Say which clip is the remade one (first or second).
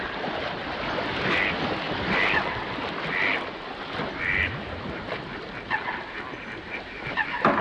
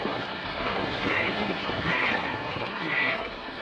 second